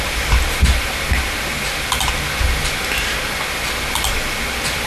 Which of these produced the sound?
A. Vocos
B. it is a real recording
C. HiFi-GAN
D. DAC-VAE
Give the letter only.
B